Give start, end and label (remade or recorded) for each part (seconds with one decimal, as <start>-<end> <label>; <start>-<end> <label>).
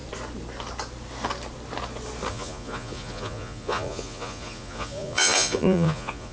0.0-2.3 recorded; 2.3-6.3 remade